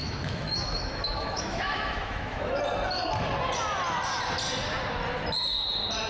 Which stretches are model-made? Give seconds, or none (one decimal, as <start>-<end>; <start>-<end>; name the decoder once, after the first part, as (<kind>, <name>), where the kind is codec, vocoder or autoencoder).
0.0-2.6 (autoencoder, DAC-VAE)